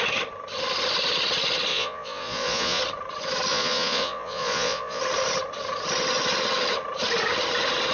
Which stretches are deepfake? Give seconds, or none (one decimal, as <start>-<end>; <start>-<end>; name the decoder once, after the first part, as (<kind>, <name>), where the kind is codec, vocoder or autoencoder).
1.7-2.8 (vocoder, Vocos); 3.5-5.0